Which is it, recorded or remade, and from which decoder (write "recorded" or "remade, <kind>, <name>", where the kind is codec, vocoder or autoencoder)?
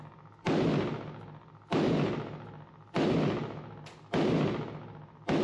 recorded